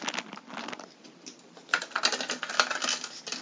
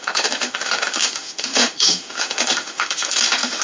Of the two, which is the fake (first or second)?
second